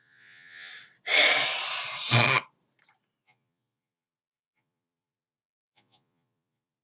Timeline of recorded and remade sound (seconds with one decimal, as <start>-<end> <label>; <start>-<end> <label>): 0.0-0.7 remade; 0.7-3.2 recorded; 3.2-6.8 remade